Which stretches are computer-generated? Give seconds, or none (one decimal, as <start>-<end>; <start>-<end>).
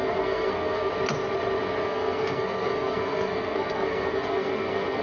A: 0.0-0.9; 1.8-5.0